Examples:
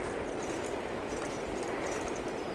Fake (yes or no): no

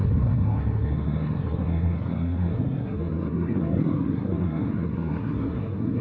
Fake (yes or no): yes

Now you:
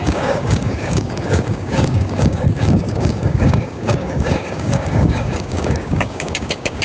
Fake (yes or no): yes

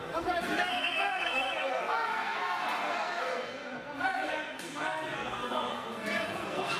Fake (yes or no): yes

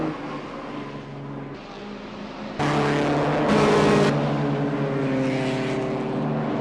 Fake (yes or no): no